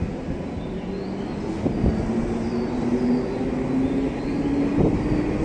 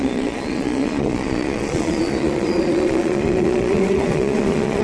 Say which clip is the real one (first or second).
first